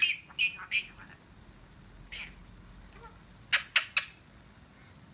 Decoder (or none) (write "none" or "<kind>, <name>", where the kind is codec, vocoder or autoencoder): none